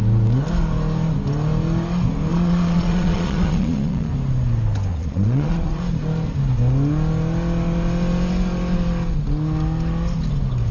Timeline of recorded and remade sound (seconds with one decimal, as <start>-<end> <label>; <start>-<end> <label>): 0.0-2.3 recorded; 2.3-4.1 remade; 4.1-4.9 recorded; 4.9-5.8 remade; 5.8-10.7 recorded